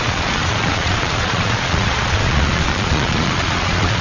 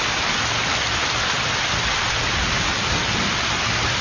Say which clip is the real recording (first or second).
second